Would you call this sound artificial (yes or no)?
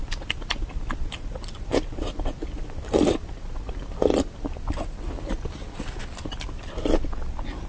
no